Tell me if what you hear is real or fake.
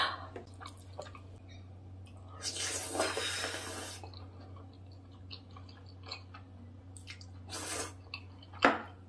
real